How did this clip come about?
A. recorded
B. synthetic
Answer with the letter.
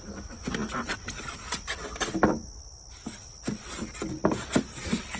A